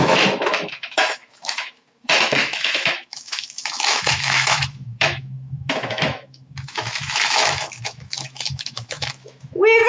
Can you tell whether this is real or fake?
fake